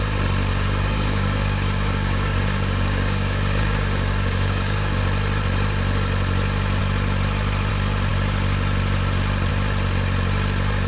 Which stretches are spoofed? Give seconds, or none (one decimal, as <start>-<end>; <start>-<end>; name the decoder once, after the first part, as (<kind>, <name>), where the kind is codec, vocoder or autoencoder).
0.5-5.0 (codec, DAC)